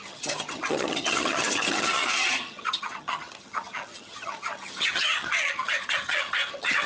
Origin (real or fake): fake